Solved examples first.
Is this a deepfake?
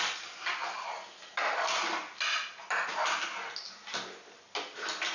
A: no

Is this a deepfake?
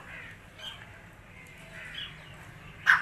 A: no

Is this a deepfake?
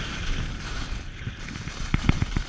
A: no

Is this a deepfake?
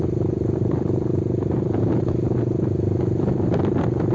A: yes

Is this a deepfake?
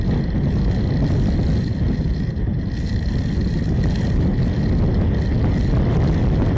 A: no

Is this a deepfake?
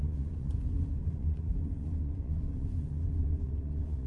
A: yes